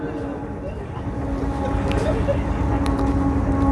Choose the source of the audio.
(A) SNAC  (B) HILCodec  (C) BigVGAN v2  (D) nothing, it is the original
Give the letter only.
D